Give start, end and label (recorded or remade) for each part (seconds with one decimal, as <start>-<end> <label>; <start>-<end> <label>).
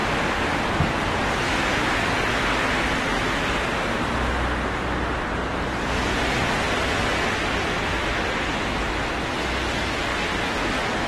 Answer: 0.0-11.1 recorded